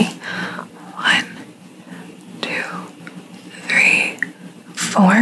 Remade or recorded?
recorded